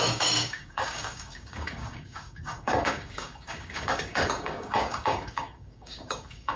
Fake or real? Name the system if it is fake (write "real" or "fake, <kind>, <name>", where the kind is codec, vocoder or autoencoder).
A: fake, codec, DAC